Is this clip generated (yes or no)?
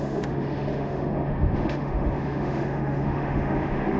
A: yes